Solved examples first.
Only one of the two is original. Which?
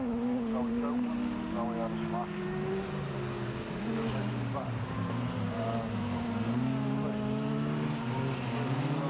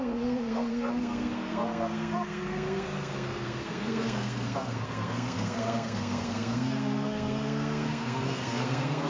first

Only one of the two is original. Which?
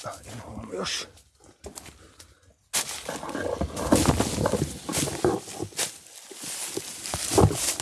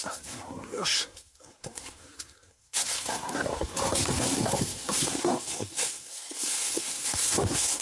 first